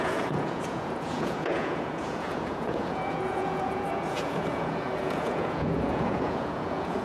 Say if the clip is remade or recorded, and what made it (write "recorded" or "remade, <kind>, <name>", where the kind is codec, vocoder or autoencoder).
remade, vocoder, Vocos